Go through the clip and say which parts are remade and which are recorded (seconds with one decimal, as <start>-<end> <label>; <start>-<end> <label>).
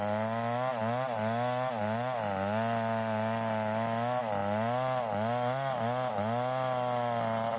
0.0-7.6 recorded